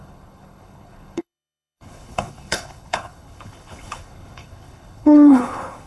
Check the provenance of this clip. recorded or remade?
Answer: remade